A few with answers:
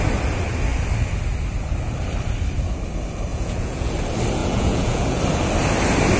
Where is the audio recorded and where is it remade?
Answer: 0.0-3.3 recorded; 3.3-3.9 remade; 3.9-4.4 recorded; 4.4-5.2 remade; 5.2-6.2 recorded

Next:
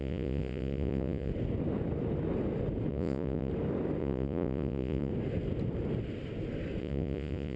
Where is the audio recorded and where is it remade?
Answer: 0.0-1.3 remade; 1.3-2.9 recorded; 2.9-3.5 remade; 3.5-4.0 recorded; 4.0-5.1 remade; 5.1-6.8 recorded; 6.8-7.6 remade